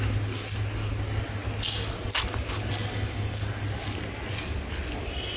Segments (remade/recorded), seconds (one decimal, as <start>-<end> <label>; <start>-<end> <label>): 0.0-5.4 recorded